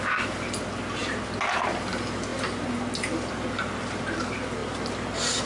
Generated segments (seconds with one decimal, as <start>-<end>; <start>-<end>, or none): none

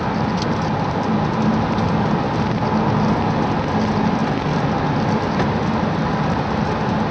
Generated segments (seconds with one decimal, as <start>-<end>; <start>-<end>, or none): none

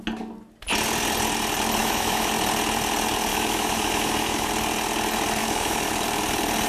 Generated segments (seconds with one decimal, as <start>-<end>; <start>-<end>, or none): 1.8-2.3; 3.3-4.5; 5.4-5.9

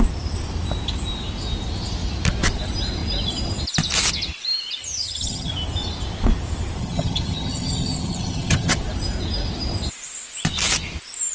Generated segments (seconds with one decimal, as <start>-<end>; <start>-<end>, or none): 4.8-5.5; 6.8-8.8

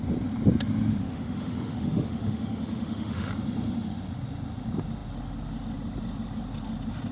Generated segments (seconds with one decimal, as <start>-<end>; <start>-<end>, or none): 1.0-3.3

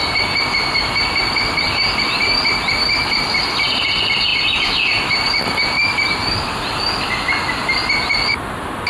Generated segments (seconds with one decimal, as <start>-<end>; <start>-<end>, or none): none

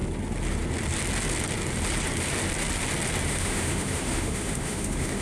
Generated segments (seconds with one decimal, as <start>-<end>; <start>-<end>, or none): 3.3-5.2

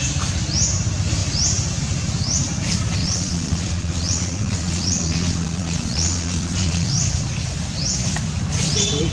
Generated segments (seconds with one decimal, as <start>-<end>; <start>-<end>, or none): 3.0-6.9